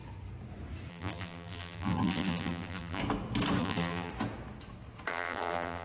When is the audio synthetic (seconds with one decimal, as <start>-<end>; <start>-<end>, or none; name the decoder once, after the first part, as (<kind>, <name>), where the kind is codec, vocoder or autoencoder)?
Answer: 0.9-3.0 (vocoder, BigVGAN v2); 3.6-4.1; 5.1-5.8